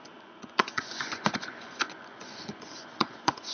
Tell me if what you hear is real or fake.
fake